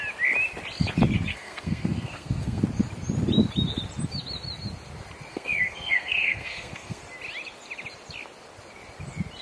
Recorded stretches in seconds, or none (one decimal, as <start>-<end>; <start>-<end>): 0.0-1.3; 2.6-5.3; 7.0-9.4